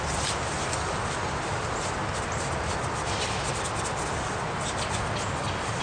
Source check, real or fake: real